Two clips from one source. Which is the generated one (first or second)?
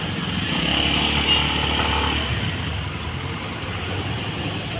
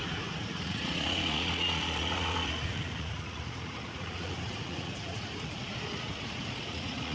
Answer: second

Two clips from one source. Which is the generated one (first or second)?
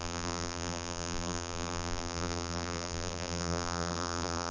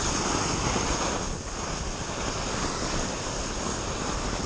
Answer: first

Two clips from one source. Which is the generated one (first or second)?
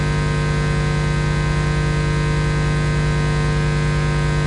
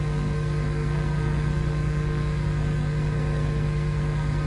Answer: second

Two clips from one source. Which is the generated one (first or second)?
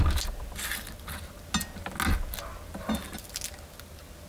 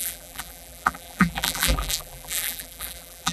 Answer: second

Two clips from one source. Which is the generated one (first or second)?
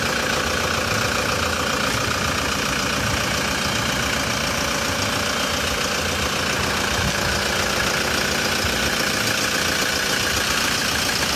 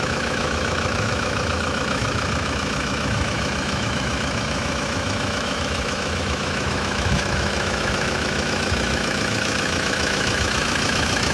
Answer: second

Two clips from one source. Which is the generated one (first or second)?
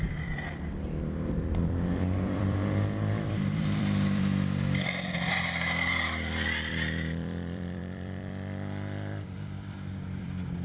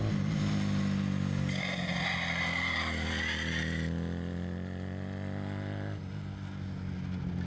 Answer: first